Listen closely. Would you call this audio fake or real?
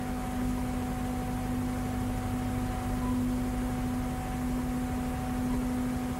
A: real